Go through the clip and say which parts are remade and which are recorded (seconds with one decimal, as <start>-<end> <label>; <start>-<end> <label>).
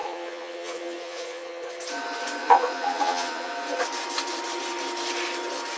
0.0-1.7 remade; 1.7-2.4 recorded; 2.4-3.5 remade; 3.5-5.8 recorded